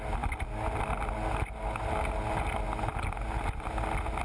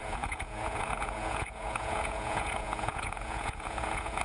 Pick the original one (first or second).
first